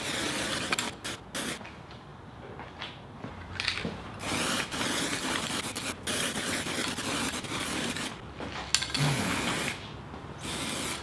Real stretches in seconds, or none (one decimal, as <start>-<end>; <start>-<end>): 0.0-11.0